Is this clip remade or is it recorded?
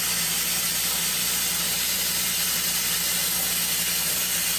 recorded